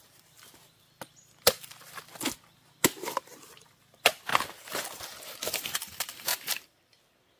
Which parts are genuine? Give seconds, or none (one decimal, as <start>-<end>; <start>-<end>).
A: 0.0-4.3; 5.6-6.3; 7.0-7.4